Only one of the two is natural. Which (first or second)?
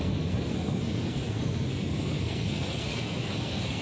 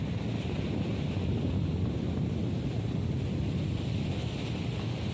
second